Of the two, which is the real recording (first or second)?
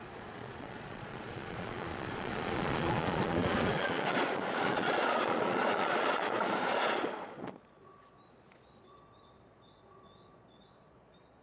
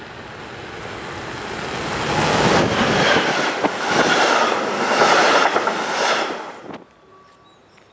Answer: second